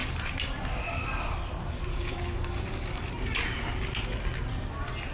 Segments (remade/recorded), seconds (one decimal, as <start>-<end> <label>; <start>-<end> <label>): 0.0-1.9 recorded; 1.9-3.1 remade; 3.1-5.1 recorded